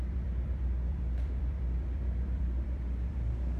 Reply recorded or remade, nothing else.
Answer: remade